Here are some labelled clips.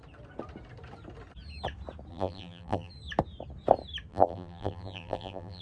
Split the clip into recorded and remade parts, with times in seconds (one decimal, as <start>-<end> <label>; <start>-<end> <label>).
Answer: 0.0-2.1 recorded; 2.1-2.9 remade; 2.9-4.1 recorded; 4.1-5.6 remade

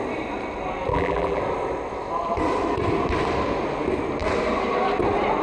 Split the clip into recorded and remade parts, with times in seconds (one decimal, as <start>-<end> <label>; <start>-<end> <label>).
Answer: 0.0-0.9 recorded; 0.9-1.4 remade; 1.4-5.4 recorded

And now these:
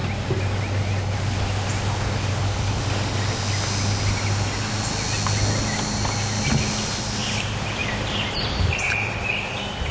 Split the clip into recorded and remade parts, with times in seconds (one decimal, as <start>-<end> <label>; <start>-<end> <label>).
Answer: 0.0-7.8 recorded; 7.8-9.2 remade; 9.2-9.9 recorded

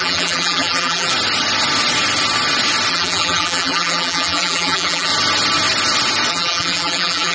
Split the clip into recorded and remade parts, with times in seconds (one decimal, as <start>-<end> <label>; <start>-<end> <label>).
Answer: 0.0-1.1 remade; 1.1-2.9 recorded; 2.9-5.1 remade; 5.1-6.3 recorded; 6.3-7.3 remade